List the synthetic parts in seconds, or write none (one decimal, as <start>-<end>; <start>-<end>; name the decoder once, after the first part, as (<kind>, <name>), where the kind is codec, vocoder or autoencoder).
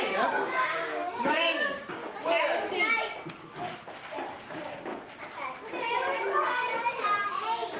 0.0-2.0 (codec, DAC); 4.2-4.9; 7.3-7.8